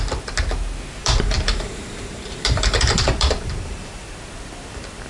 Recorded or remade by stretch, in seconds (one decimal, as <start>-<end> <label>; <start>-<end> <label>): 0.0-1.0 recorded; 1.0-4.1 remade; 4.1-5.1 recorded